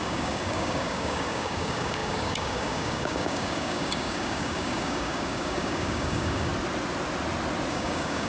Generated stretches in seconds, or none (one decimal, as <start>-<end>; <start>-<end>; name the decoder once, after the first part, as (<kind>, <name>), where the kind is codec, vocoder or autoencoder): 0.0-6.5 (codec, DAC); 7.7-8.3